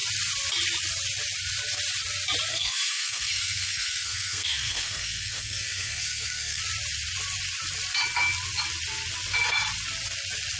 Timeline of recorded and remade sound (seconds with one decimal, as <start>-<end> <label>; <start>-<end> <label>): 0.0-2.5 recorded; 2.5-6.6 remade; 6.6-10.6 recorded